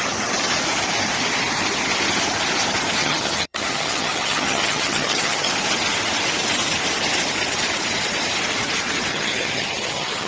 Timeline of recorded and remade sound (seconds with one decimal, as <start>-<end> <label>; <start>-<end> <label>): 0.0-3.0 recorded; 3.0-5.5 remade; 5.5-9.1 recorded; 9.1-10.3 remade